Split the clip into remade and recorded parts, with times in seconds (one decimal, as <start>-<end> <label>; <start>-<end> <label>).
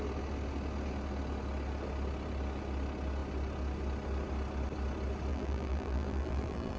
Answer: 0.0-5.3 recorded; 5.3-6.8 remade